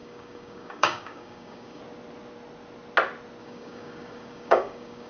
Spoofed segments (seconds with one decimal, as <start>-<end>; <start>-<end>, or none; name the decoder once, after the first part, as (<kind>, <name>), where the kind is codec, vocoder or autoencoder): 0.0-1.8 (codec, DAC); 3.4-5.1